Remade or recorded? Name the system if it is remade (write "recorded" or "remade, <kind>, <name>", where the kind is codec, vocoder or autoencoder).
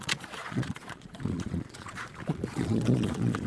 remade, vocoder, Vocos